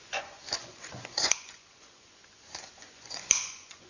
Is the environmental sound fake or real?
fake